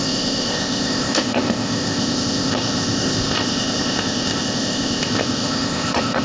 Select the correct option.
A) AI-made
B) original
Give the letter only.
A